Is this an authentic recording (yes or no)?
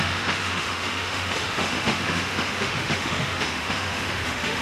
no